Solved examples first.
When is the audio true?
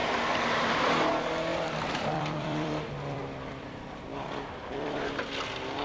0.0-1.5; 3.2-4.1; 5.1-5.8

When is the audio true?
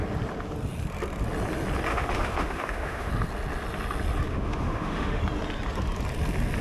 0.0-1.9; 3.1-4.3; 5.2-6.6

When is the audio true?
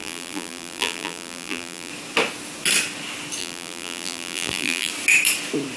1.9-3.4; 4.9-5.8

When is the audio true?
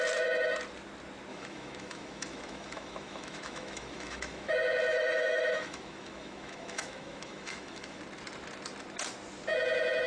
0.0-1.3; 4.5-4.9; 8.0-10.1